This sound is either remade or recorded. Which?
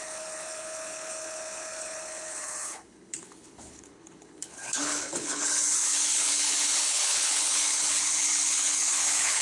remade